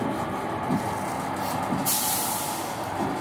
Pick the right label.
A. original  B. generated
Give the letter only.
A